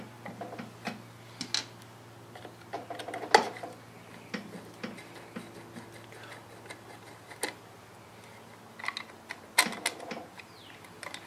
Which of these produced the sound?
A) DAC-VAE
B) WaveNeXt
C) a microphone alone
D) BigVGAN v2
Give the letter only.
C